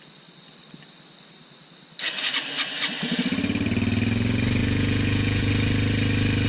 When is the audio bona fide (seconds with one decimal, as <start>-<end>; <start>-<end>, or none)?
0.0-4.6; 5.5-6.5